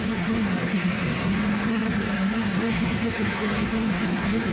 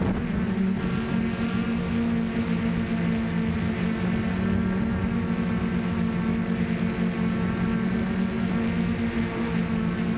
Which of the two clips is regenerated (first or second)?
first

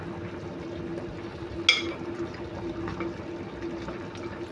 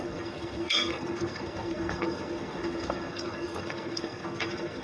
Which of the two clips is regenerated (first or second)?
second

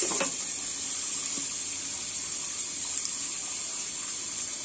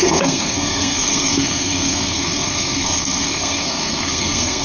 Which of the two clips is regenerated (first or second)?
second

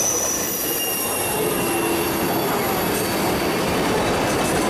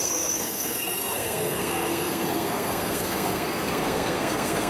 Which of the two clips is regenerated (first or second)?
second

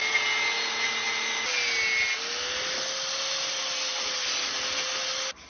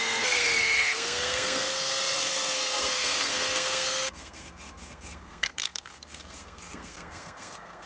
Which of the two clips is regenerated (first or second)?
second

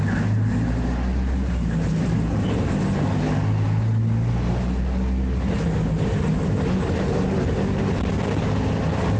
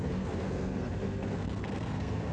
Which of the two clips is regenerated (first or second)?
second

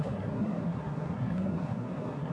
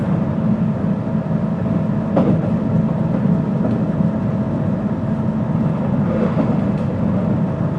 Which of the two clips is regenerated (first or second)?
first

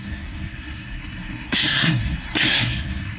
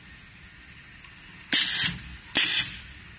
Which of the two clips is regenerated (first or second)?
first